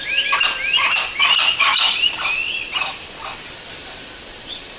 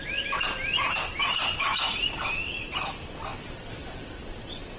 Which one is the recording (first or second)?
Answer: first